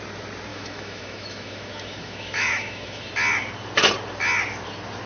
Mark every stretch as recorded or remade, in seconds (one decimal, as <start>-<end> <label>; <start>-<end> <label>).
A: 0.0-0.5 recorded; 0.5-3.1 remade; 3.1-5.1 recorded